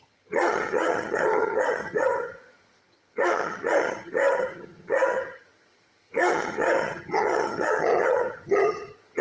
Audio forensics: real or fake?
fake